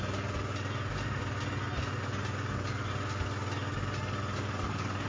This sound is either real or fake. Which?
real